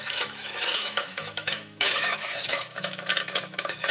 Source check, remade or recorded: remade